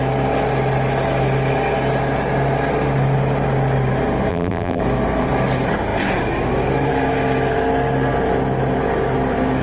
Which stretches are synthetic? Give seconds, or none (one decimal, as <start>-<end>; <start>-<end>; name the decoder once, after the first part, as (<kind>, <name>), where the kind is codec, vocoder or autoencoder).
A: 4.3-4.8 (vocoder, BigVGAN v2)